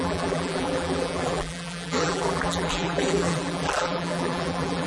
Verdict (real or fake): fake